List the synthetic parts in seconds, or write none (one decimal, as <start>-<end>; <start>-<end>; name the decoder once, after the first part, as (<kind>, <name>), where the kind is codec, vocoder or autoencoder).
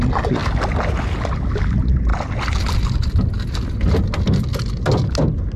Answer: none